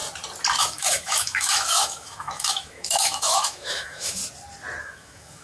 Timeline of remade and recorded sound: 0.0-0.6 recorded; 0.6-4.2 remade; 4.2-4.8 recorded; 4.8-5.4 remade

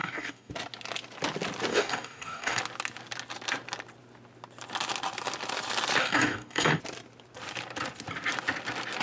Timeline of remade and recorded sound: 0.0-0.5 remade; 0.5-1.7 recorded; 1.7-2.6 remade; 2.6-6.0 recorded; 6.0-6.8 remade; 6.8-9.0 recorded